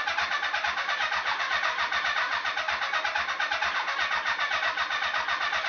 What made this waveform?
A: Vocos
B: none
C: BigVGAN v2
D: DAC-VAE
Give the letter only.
B